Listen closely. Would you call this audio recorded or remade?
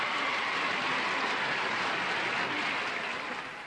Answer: recorded